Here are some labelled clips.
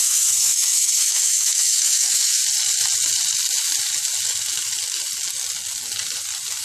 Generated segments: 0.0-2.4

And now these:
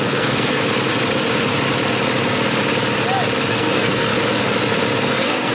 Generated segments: 0.0-0.6; 3.5-4.1; 5.1-5.5

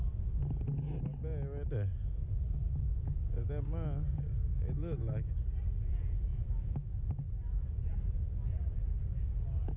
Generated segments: 4.5-5.3; 6.3-6.9